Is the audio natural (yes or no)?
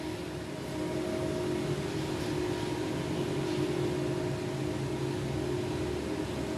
yes